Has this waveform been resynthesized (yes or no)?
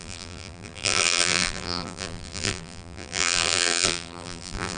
yes